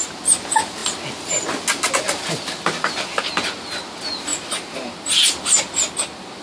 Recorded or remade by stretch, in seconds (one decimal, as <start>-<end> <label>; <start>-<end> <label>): 0.0-6.4 recorded